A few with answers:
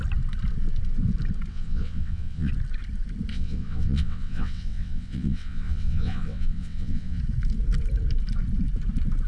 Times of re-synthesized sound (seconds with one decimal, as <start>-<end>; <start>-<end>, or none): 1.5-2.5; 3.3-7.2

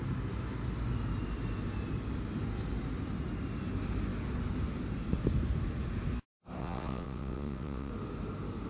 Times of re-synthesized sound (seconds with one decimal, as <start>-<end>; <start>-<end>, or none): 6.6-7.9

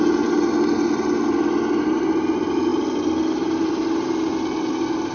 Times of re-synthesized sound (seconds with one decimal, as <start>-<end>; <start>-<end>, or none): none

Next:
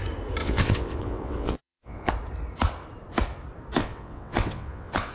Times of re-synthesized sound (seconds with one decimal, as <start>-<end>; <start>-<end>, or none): 0.4-2.1; 3.8-5.1

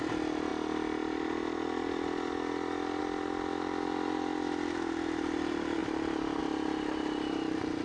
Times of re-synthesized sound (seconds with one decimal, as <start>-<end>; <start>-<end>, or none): none

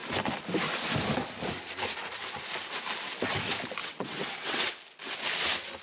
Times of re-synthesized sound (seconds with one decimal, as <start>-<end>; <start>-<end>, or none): 3.8-4.7

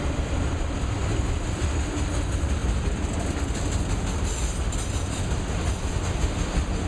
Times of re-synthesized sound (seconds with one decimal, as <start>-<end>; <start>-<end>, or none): none